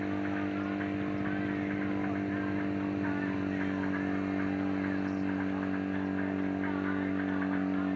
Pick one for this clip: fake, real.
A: real